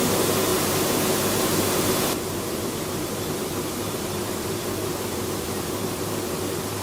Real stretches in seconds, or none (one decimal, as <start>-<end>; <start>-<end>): 0.5-1.6